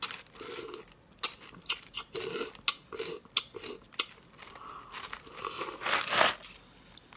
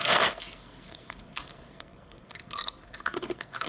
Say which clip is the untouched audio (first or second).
first